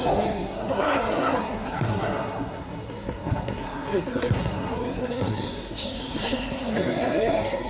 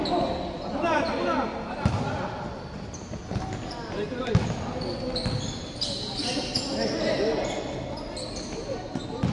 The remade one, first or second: first